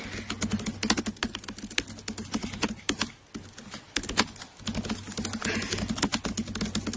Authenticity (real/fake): real